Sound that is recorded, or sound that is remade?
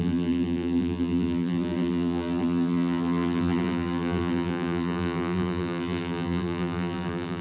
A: remade